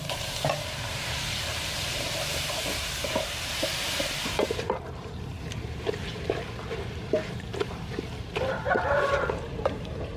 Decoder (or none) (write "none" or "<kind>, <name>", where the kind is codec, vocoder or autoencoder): vocoder, BigVGAN v2